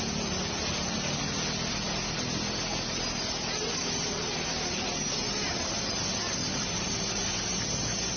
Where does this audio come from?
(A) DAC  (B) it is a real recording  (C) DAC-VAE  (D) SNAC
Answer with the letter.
B